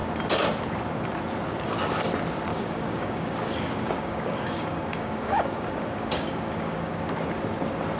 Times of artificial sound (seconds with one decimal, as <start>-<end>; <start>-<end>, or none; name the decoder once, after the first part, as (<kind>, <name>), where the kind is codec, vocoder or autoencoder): 2.5-7.3 (codec, DAC)